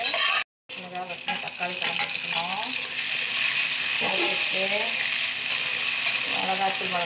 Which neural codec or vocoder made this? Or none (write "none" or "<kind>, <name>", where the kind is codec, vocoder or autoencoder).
none